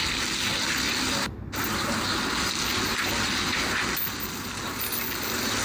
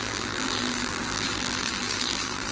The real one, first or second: first